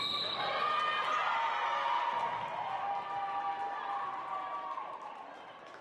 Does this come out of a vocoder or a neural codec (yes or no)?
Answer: no